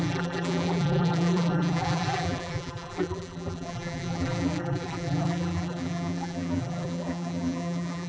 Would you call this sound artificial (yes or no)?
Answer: yes